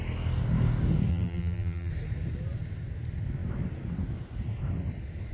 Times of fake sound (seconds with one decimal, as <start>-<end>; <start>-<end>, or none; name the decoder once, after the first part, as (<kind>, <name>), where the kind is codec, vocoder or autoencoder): 1.1-1.9 (vocoder, BigVGAN v2)